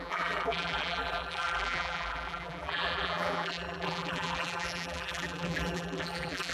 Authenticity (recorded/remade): remade